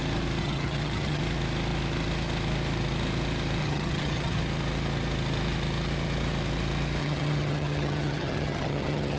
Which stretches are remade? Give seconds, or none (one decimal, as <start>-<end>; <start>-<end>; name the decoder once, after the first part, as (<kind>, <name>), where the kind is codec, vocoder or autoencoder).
0.4-1.2 (vocoder, HiFi-GAN); 3.6-4.4; 7.0-9.2